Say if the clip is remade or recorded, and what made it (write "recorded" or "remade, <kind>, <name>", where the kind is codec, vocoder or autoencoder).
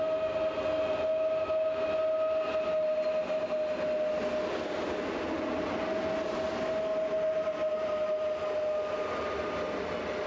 recorded